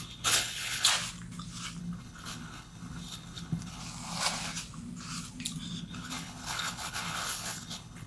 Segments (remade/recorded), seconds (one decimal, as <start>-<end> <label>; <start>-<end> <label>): 0.0-0.9 remade; 0.9-1.8 recorded; 1.8-3.8 remade; 3.8-5.8 recorded; 5.8-8.1 remade